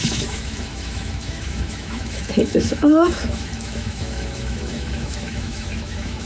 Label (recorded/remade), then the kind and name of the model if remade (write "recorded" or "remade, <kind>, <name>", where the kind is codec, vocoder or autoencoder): remade, autoencoder, DAC-VAE